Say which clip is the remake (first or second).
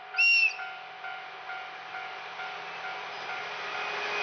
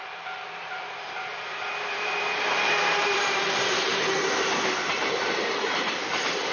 second